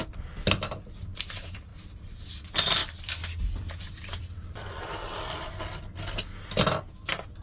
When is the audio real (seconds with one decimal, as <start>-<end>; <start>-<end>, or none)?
0.0-1.7; 2.3-2.8; 5.6-7.4